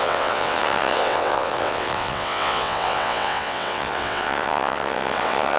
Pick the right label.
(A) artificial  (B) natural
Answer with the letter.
A